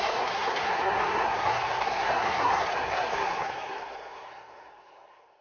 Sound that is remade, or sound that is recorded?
remade